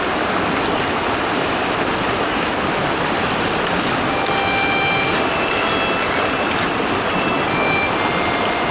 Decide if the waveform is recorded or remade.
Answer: recorded